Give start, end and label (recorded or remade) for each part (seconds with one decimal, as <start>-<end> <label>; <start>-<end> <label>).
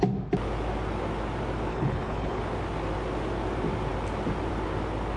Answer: 0.0-1.7 recorded; 1.7-2.4 remade; 2.4-5.2 recorded